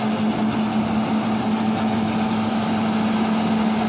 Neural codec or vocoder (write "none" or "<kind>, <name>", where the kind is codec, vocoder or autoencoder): none